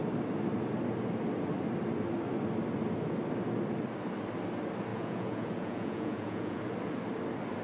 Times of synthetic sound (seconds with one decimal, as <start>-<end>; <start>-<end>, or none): 4.9-6.6